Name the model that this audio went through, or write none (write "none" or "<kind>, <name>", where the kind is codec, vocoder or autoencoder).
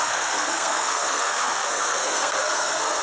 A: codec, SNAC